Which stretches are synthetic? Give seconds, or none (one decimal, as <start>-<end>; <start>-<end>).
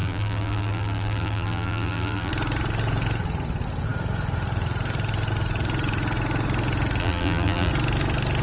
0.0-2.3; 7.0-7.7